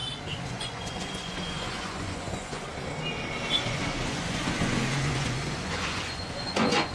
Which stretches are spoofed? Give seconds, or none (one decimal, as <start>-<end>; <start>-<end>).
0.5-2.7; 3.6-6.9